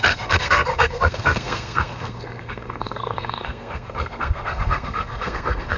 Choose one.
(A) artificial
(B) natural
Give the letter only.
A